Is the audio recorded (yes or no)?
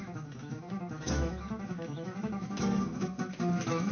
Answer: no